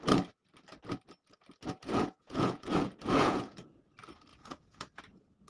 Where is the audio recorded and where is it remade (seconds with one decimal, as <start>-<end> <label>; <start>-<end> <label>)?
0.0-1.8 recorded; 1.8-3.9 remade; 3.9-4.3 recorded; 4.3-5.0 remade; 5.0-5.5 recorded